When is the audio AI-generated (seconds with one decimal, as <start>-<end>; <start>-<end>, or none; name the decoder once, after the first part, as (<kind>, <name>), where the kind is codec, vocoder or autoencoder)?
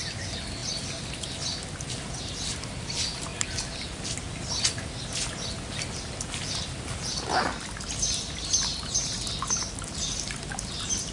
none